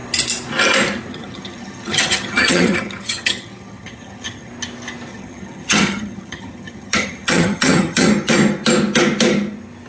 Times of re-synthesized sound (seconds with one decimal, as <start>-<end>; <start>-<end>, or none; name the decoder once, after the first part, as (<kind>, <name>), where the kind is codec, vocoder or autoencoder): 1.1-4.5 (vocoder, HiFi-GAN); 5.1-8.1